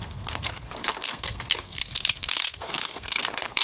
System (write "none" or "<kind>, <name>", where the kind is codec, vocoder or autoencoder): codec, SNAC